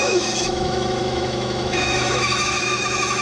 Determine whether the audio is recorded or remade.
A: remade